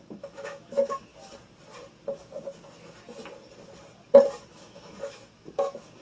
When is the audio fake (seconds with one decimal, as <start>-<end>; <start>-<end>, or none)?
0.0-1.1; 4.5-6.0